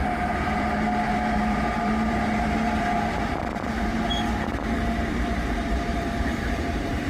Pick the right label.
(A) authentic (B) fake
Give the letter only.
B